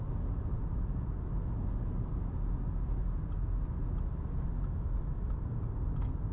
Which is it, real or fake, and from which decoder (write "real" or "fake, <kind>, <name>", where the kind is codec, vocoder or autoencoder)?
real